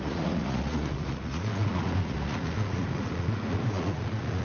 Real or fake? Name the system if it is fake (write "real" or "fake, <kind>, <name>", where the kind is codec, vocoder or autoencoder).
fake, vocoder, Vocos